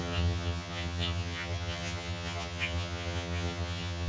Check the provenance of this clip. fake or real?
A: fake